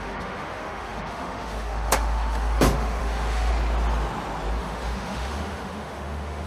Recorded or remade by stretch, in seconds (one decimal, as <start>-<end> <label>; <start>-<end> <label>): 0.0-3.5 remade; 3.5-4.6 recorded; 4.6-6.5 remade